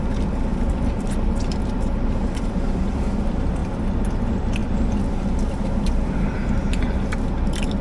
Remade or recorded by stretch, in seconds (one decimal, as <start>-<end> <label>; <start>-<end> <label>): 0.0-7.8 remade

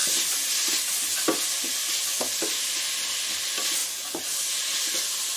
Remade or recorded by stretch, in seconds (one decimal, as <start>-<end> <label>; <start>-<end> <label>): 0.0-5.4 recorded

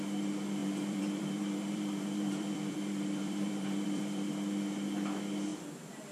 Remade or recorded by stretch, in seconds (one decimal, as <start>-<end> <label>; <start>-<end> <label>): 0.0-0.6 recorded; 0.6-4.3 remade; 4.3-6.1 recorded

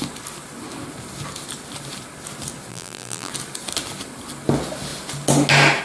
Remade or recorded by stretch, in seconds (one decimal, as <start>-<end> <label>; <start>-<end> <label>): 0.0-2.7 recorded; 2.7-3.3 remade; 3.3-5.8 recorded